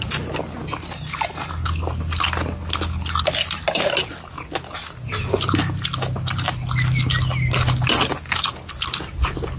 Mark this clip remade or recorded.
recorded